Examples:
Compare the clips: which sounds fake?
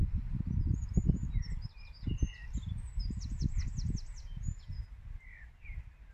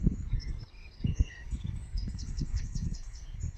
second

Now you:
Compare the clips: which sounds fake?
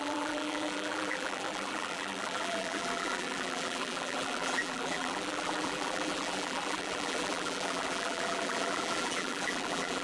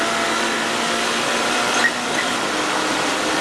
first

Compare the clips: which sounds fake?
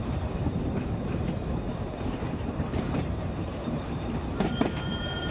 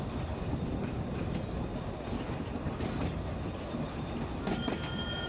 first